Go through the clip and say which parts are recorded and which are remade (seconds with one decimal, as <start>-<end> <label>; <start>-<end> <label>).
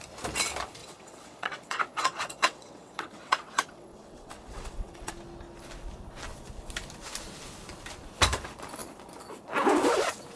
0.0-0.8 recorded; 0.8-5.1 remade; 5.1-10.4 recorded